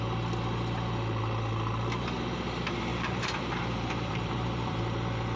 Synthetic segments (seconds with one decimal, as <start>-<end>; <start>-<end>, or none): 2.9-4.8

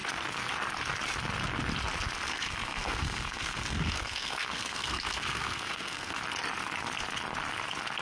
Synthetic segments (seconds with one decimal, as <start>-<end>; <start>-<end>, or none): 2.3-6.2